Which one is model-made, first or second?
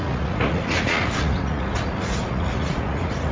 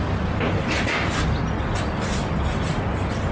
first